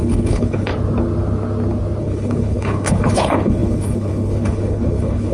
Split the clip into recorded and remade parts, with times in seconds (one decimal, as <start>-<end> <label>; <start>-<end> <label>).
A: 0.0-0.7 remade; 0.7-2.0 recorded; 2.0-5.3 remade